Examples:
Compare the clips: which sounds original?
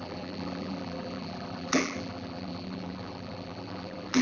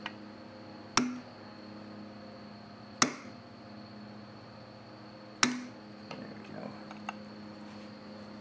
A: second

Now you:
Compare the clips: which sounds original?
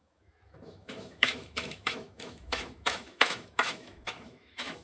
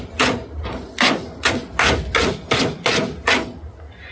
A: second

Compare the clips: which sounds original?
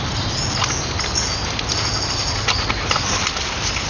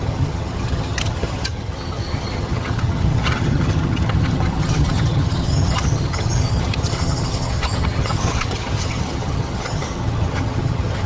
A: first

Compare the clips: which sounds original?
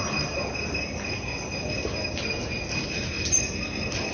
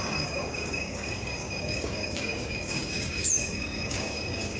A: first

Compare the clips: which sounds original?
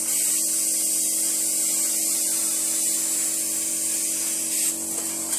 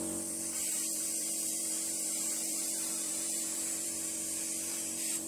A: first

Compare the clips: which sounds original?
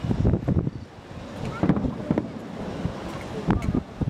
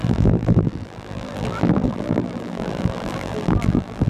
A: first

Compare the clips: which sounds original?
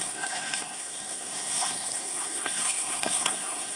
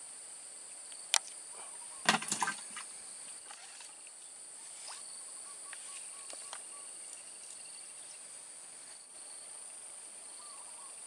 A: second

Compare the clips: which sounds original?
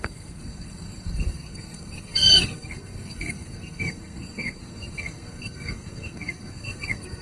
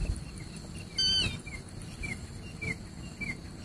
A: second